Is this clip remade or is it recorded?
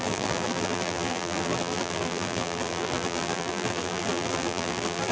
remade